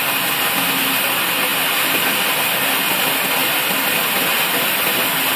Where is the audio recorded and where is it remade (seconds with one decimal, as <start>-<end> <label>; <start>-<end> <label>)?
0.0-5.4 recorded